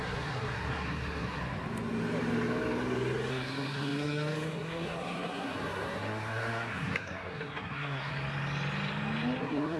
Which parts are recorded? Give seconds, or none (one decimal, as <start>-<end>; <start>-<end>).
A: 1.4-3.3; 8.1-9.4